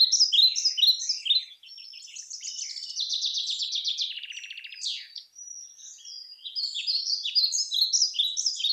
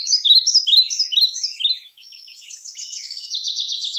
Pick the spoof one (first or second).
second